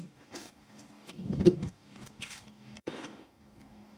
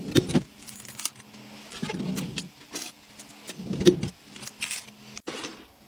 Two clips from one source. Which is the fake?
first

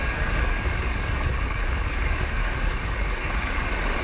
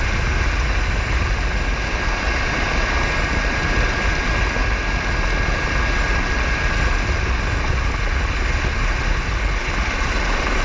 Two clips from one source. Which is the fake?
first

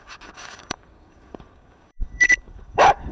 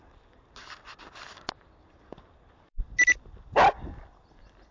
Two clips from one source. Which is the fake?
first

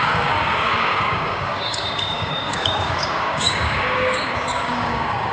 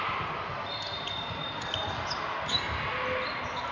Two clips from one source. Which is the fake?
first